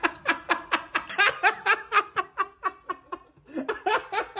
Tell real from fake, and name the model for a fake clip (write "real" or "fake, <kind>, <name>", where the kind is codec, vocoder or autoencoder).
real